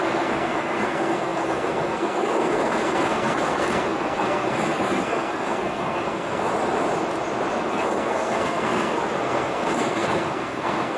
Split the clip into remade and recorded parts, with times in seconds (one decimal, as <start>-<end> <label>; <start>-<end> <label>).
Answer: 0.0-6.5 remade; 6.5-7.7 recorded; 7.7-11.0 remade